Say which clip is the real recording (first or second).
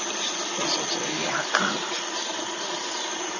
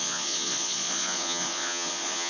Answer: first